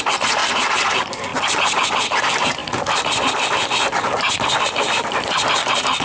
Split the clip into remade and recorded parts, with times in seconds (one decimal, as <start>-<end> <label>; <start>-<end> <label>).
0.0-0.4 remade; 0.4-0.9 recorded; 0.9-1.3 remade; 1.3-2.2 recorded; 2.2-2.6 remade; 2.6-4.8 recorded; 4.8-6.0 remade